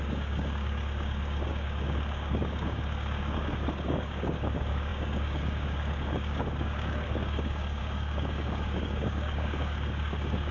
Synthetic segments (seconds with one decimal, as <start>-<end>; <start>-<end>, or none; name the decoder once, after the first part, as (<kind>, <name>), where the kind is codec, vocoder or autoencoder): 0.0-10.5 (codec, DAC)